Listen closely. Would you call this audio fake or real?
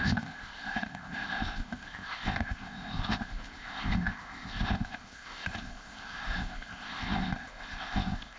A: fake